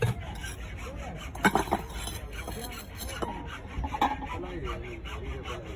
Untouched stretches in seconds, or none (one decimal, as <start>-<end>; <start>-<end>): 0.0-5.8